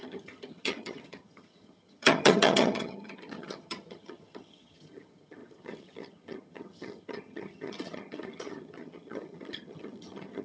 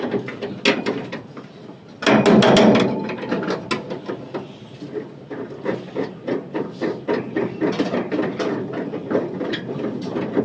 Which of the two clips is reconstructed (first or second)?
first